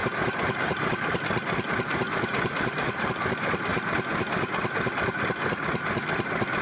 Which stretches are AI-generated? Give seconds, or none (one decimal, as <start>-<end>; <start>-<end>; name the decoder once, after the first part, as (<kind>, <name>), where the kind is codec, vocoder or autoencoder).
1.7-3.7 (vocoder, BigVGAN v2)